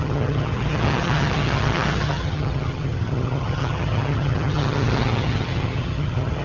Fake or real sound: fake